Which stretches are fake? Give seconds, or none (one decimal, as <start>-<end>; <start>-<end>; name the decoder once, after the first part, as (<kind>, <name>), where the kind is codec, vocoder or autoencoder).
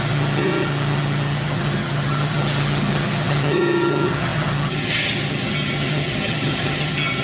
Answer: 0.0-7.2 (vocoder, HiFi-GAN)